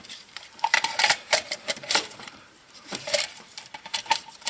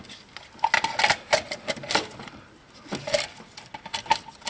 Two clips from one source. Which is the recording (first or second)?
second